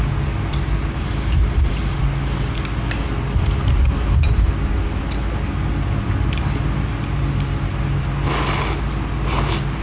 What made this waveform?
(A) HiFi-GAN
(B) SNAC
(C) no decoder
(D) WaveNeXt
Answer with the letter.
C